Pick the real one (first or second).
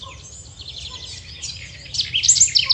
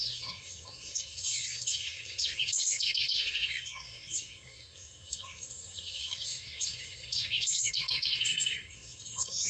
first